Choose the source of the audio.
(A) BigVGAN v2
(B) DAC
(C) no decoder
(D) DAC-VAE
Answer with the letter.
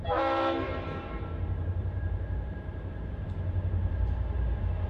A